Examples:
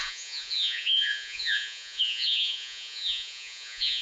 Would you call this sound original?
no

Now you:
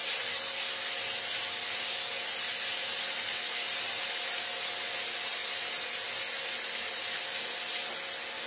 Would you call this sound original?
yes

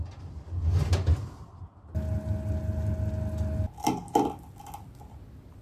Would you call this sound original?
yes